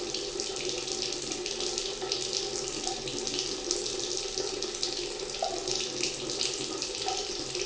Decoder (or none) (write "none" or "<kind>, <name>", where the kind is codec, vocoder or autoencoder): none